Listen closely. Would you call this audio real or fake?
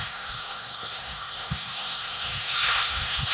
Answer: fake